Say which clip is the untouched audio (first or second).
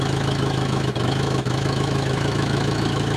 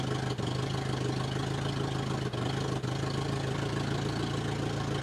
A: second